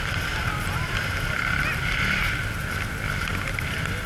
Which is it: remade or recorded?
recorded